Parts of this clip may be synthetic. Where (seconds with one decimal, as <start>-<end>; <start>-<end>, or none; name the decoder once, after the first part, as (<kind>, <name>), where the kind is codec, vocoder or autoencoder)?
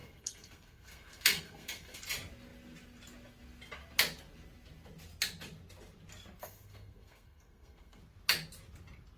0.0-2.0 (codec, SNAC); 6.4-8.0